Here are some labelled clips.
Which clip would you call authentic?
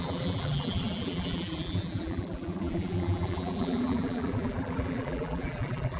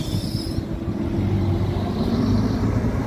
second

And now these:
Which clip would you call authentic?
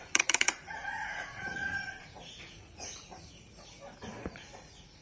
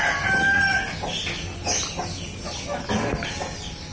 second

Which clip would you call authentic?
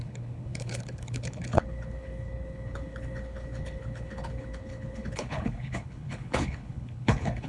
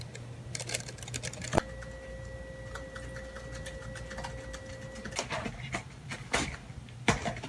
second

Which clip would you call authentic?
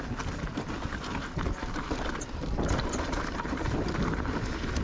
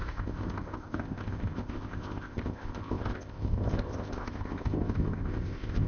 first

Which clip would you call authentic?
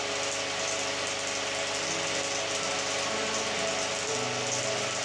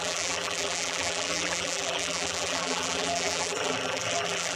first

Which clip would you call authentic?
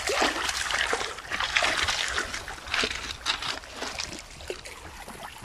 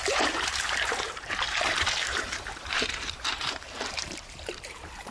first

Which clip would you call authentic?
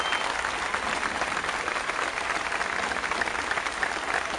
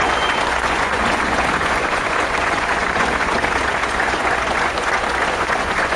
first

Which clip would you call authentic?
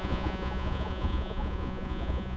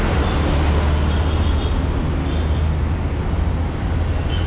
second